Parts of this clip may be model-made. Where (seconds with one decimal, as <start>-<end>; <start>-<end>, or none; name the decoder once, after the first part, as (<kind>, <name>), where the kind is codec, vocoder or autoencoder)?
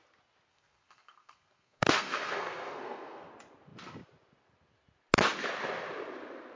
0.5-3.3 (codec, SNAC)